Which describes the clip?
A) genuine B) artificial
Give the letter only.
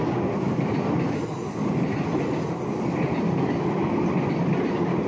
A